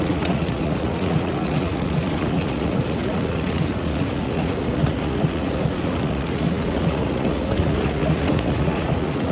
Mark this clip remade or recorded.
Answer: remade